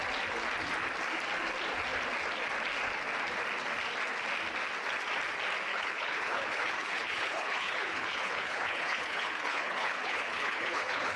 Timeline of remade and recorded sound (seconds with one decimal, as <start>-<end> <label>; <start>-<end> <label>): 0.0-5.7 recorded; 5.7-11.2 remade